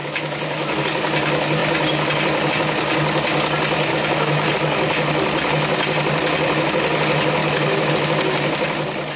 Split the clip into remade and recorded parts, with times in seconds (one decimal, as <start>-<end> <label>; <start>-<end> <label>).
0.0-0.8 remade; 0.8-3.9 recorded; 3.9-4.5 remade; 4.5-7.4 recorded; 7.4-7.9 remade; 7.9-9.2 recorded